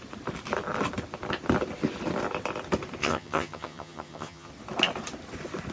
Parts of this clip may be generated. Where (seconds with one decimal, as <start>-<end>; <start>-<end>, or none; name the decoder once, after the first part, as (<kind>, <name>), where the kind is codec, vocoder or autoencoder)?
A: 3.0-4.5 (vocoder, HiFi-GAN)